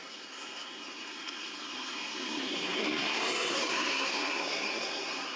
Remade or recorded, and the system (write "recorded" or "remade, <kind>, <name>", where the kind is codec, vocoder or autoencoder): remade, codec, SNAC